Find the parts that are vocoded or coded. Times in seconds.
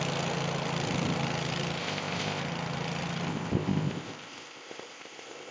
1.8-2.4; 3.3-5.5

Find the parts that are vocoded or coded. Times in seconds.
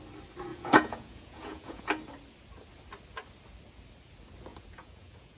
0.5-1.9; 4.5-5.4